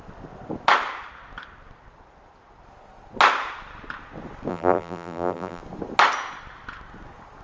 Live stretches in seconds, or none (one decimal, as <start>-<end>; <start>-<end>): 0.0-4.5; 5.6-7.4